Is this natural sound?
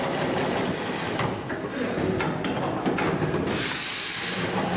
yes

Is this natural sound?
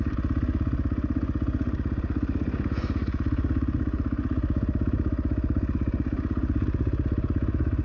yes